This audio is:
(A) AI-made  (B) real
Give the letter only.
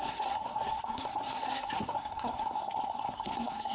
A